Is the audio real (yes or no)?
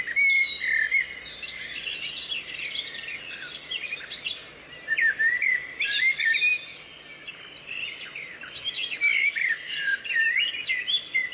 no